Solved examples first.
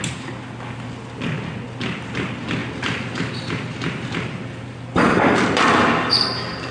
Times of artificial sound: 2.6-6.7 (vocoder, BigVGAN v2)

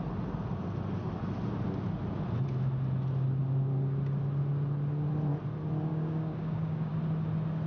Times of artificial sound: 5.9-6.9 (codec, DAC)

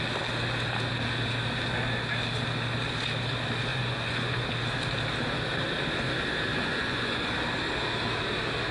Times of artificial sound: 3.7-4.4 (vocoder, Vocos); 6.5-7.3

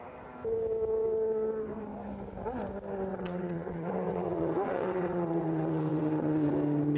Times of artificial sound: 3.1-6.5 (vocoder, WaveNeXt)

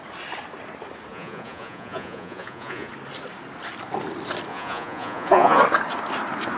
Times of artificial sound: 1.1-2.9 (vocoder, Vocos); 4.5-5.6

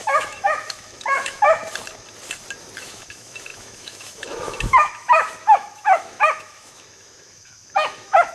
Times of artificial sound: 0.0-1.6 (autoencoder, DAC-VAE); 2.8-8.3